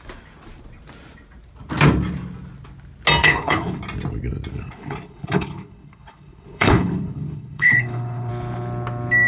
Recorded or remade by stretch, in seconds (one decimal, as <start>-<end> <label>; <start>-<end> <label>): 0.0-3.2 recorded; 3.2-3.8 remade; 3.8-4.5 recorded; 4.5-8.3 remade; 8.3-9.3 recorded